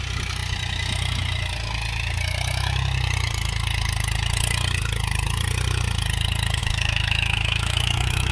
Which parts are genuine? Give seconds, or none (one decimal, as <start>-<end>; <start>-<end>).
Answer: 0.0-6.6